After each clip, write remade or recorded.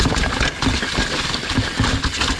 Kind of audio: recorded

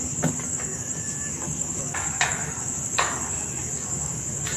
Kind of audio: remade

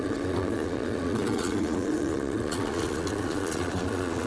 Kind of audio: remade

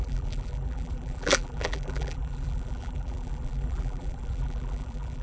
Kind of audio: remade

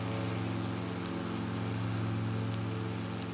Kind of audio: recorded